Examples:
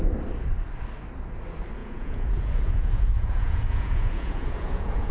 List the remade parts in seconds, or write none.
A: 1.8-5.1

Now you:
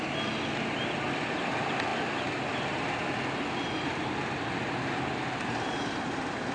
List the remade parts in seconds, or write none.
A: none

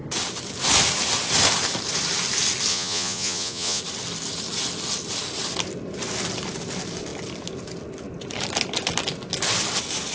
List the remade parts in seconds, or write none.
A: 2.7-3.8

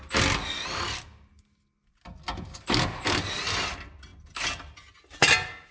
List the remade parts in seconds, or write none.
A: none

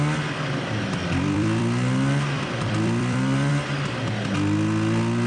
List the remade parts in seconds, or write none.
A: 1.0-3.5

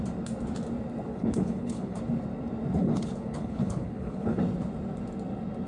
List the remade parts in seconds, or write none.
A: 1.1-2.0; 2.8-4.4